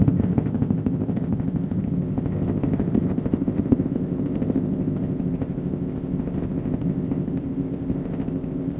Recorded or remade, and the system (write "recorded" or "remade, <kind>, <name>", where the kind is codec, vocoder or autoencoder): remade, codec, ZipCodec